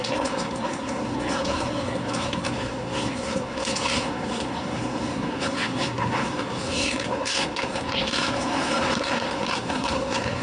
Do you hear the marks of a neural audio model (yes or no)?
yes